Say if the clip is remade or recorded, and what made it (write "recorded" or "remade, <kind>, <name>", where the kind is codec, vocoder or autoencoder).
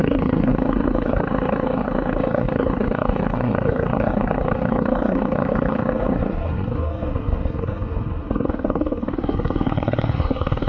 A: remade, codec, SNAC